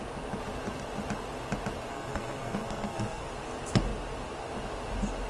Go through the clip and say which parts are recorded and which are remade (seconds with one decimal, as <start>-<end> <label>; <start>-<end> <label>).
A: 0.0-1.9 recorded; 1.9-3.3 remade; 3.3-5.3 recorded